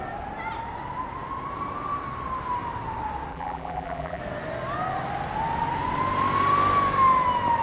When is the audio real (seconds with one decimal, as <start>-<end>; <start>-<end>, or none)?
0.0-3.3; 4.2-7.6